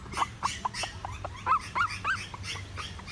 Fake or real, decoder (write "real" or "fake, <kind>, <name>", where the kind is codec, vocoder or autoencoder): real